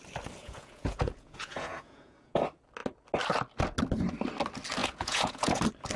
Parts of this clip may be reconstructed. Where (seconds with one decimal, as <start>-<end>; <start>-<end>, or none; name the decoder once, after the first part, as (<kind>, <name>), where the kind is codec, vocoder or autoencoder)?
0.4-2.4 (vocoder, Vocos); 4.8-5.6